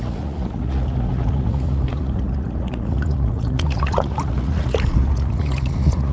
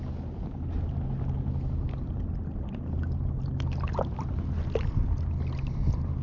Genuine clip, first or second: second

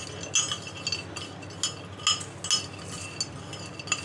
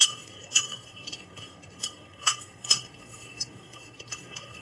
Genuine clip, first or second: first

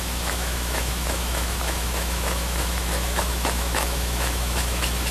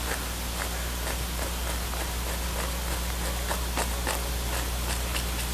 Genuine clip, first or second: second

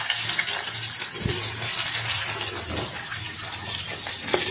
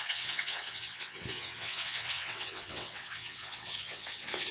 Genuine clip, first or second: first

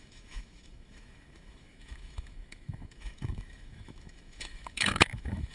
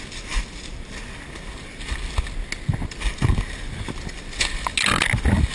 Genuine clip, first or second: second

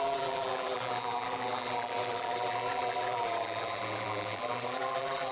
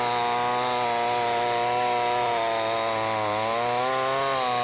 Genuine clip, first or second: second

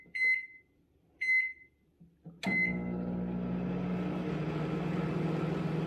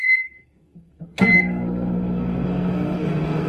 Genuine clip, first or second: first